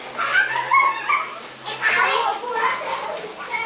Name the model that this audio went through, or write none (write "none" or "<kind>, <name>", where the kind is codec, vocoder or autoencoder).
none